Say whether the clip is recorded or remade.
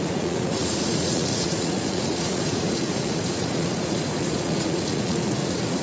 remade